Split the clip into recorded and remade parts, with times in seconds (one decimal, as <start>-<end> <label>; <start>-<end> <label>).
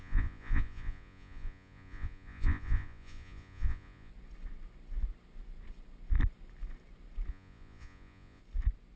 0.0-4.1 remade; 4.1-7.3 recorded; 7.3-8.4 remade; 8.4-9.0 recorded